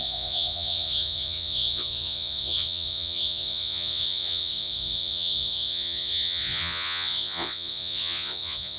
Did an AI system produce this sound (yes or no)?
yes